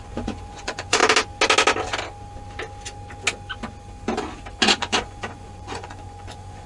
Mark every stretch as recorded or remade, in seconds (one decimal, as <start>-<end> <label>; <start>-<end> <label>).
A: 0.0-1.0 remade; 1.0-4.6 recorded; 4.6-6.7 remade